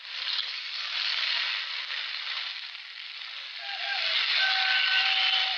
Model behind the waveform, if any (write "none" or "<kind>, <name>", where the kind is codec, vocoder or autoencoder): none